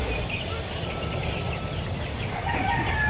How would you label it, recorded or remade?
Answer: recorded